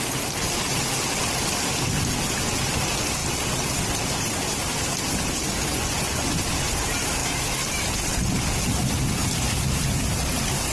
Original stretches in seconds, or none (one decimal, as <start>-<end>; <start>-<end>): 0.0-5.7; 6.4-10.7